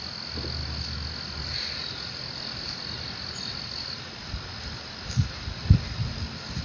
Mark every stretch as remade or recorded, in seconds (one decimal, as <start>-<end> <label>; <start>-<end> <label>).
0.0-6.6 recorded